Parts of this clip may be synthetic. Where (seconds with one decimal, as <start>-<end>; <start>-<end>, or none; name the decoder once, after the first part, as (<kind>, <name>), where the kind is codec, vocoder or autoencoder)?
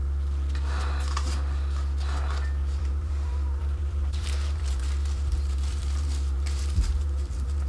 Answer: 2.8-7.7 (vocoder, BigVGAN v2)